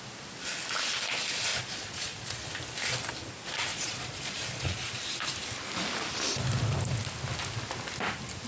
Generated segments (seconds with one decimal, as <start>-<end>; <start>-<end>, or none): 1.5-2.5; 3.7-4.9